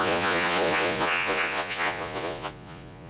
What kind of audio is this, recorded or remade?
remade